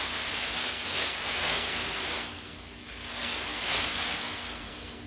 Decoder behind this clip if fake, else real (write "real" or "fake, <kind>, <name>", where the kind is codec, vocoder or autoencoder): fake, codec, SNAC